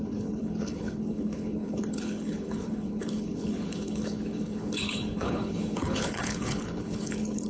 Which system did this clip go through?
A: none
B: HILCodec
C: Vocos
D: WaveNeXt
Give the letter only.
B